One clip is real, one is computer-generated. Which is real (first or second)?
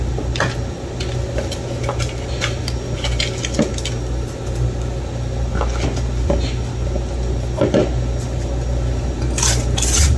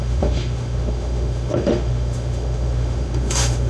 first